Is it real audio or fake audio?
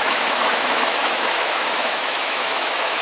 fake